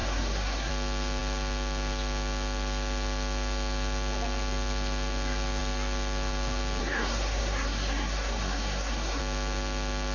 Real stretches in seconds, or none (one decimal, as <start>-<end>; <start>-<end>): 0.7-6.8; 9.2-10.1